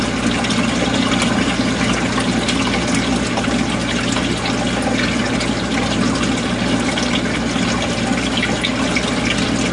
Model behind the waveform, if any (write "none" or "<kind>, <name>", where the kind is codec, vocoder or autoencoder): none